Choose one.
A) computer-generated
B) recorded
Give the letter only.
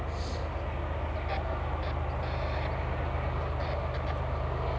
B